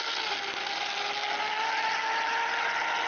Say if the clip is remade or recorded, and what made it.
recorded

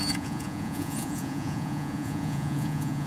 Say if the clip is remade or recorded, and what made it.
remade, vocoder, Vocos